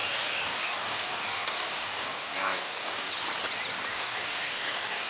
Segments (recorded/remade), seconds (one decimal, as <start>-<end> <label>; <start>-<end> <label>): 0.0-3.1 remade; 3.1-3.9 recorded; 3.9-5.1 remade